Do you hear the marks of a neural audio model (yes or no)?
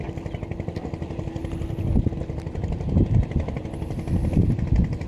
no